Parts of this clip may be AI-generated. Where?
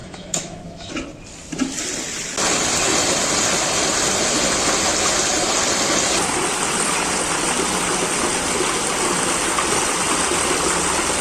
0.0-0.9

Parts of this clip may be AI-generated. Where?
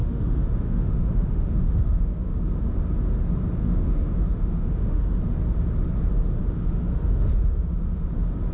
0.0-2.4; 3.6-5.2; 6.4-8.1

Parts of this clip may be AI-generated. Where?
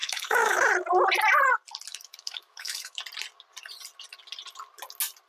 0.0-0.7; 1.9-3.0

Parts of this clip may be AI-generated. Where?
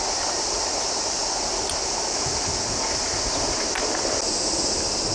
none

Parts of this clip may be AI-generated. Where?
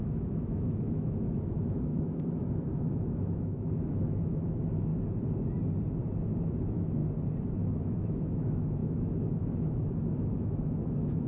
0.0-4.9; 6.6-7.0; 7.7-11.3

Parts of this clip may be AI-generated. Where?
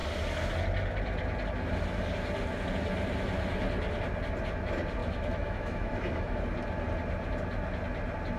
5.0-6.4